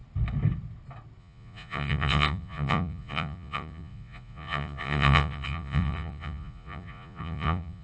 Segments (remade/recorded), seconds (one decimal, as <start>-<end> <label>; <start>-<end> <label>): 0.0-1.2 recorded; 1.2-7.8 remade